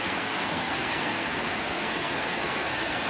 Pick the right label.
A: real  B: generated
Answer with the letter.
B